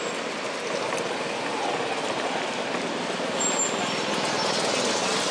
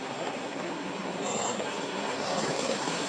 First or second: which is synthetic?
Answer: second